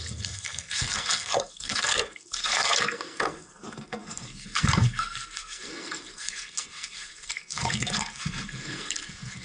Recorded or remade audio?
remade